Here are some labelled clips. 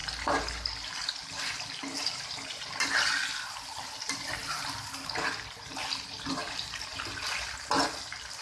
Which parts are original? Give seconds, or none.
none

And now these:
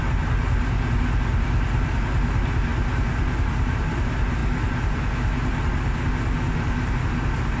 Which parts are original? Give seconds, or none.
0.0-7.6

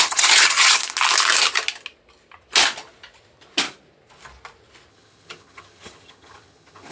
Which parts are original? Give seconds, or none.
0.8-4.9

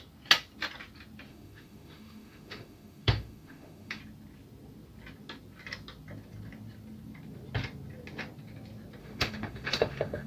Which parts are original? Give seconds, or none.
0.0-1.3; 4.0-9.0

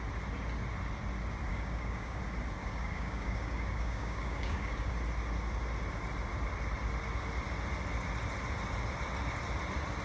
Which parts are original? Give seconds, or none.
0.0-1.5; 2.2-2.6; 4.9-10.0

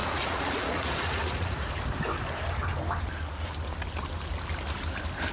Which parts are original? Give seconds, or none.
1.7-5.3

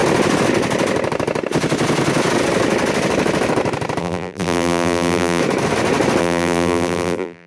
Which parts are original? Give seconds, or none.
0.0-4.0; 5.4-6.2